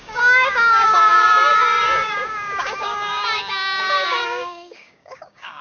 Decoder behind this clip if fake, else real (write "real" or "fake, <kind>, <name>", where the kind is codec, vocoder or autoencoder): fake, codec, DAC